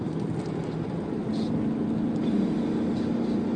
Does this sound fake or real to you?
real